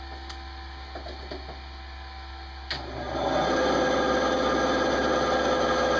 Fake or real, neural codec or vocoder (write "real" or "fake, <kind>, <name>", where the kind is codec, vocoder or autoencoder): real